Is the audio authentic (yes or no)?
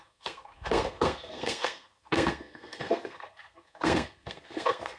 no